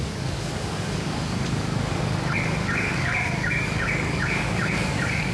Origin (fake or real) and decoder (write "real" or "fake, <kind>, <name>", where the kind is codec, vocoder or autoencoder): fake, codec, DAC